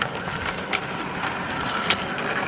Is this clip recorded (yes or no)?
yes